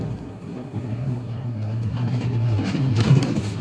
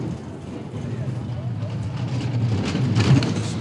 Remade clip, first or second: first